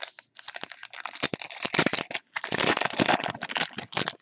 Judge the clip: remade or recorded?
recorded